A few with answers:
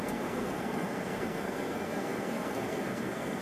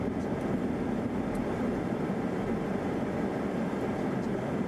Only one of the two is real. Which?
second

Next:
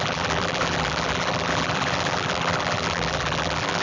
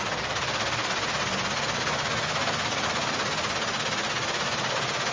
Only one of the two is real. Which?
second